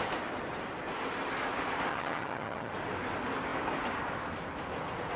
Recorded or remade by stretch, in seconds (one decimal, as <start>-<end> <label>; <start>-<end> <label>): 0.0-1.9 recorded; 1.9-2.7 remade; 2.7-5.2 recorded